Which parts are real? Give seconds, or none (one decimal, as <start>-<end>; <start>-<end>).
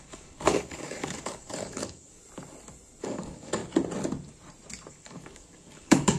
2.2-3.0; 3.6-4.9